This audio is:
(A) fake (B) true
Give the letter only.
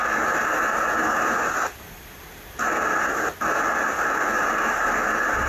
B